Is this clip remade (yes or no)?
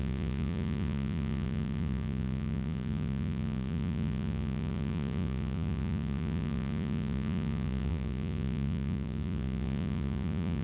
yes